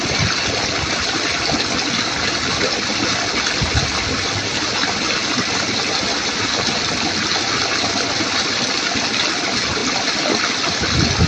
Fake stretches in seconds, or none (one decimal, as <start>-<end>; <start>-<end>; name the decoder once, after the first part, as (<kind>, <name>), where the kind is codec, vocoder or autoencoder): none